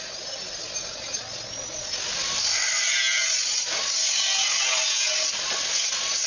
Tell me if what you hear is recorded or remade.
recorded